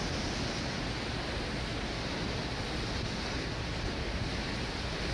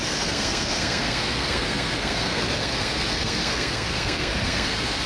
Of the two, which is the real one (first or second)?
first